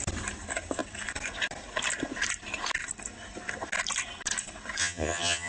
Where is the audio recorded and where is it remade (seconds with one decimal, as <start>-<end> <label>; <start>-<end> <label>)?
0.0-4.8 recorded; 4.8-5.5 remade